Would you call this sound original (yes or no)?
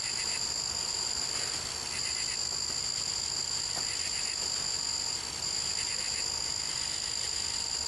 yes